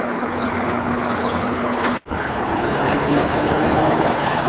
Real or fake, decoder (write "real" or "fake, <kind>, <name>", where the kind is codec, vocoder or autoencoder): fake, codec, HILCodec